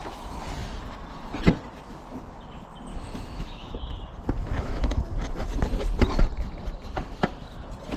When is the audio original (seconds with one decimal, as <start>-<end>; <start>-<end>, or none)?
0.0-2.9; 3.8-4.4; 5.0-8.0